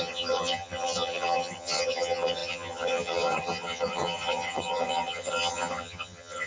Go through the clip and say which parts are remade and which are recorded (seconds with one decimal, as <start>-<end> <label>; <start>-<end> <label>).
0.0-6.5 remade